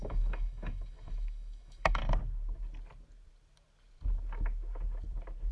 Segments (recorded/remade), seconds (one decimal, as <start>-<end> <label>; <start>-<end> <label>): 0.0-2.0 remade; 2.0-5.5 recorded

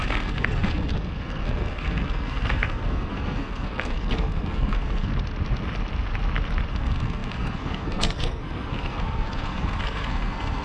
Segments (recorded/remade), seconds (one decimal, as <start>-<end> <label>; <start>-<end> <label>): 0.0-5.1 remade; 5.1-6.7 recorded; 6.7-10.6 remade

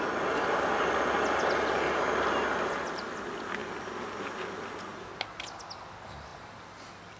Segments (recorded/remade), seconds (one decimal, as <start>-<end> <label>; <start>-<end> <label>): 0.0-7.2 recorded

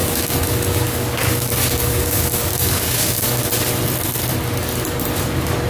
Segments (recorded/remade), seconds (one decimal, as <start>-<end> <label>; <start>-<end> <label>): 0.0-3.4 remade; 3.4-5.7 recorded

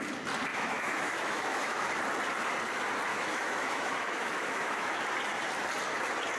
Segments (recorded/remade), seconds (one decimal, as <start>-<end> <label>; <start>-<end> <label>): 0.0-0.5 recorded; 0.5-1.9 remade; 1.9-3.1 recorded; 3.1-5.0 remade; 5.0-6.4 recorded

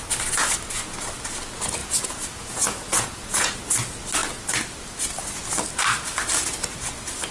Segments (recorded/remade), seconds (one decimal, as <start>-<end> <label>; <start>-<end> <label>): 0.0-1.8 recorded; 1.8-3.6 remade; 3.6-7.3 recorded